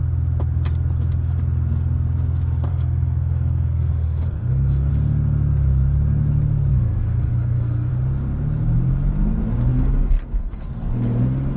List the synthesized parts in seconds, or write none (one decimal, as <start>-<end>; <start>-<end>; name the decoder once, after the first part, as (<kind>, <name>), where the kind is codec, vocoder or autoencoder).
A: 2.7-4.9 (codec, SNAC); 6.7-7.9; 9.7-10.9